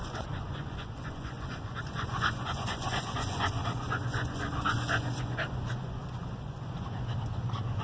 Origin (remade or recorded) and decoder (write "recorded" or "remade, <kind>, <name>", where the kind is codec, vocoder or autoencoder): remade, vocoder, Vocos